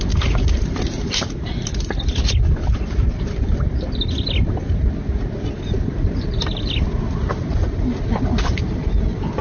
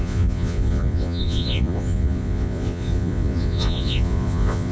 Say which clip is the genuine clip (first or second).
first